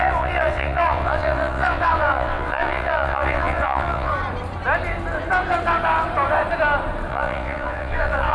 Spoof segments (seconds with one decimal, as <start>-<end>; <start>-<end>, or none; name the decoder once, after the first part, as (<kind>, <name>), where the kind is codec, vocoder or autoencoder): 0.0-4.1 (vocoder, WaveNeXt); 7.1-8.3